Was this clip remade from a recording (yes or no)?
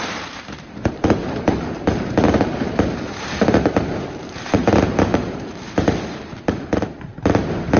yes